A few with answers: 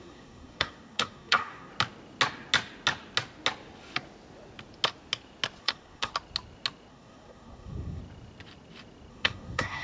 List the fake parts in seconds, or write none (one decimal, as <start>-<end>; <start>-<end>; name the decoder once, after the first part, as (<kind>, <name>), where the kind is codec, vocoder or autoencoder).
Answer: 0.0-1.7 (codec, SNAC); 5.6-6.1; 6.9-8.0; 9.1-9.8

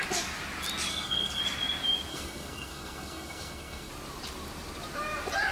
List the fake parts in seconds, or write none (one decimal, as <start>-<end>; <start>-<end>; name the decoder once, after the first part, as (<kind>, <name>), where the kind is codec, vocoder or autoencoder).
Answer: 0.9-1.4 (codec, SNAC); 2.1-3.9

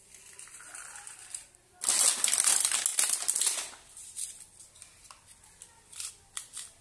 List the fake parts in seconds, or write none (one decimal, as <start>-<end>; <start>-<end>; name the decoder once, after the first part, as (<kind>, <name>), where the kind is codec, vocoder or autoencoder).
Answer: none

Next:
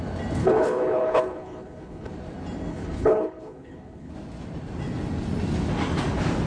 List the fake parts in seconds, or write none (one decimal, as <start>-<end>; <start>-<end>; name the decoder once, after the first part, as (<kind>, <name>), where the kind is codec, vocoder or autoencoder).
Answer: 0.4-2.1 (codec, HILCodec); 2.7-4.1